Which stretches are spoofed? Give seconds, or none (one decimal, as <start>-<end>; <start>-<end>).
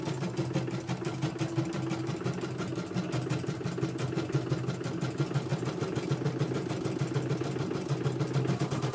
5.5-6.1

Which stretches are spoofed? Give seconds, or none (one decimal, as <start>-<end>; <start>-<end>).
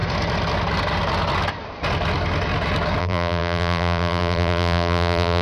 3.0-5.4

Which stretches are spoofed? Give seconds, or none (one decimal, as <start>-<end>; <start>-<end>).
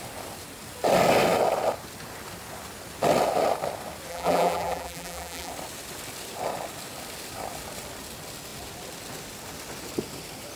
4.1-5.5